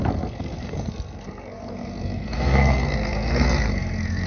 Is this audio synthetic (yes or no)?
yes